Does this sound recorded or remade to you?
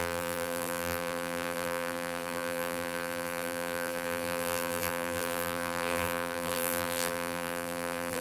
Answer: remade